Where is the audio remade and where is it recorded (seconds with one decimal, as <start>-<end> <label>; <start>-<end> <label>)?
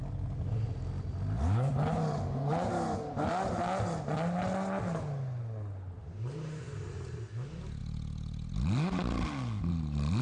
0.0-10.2 recorded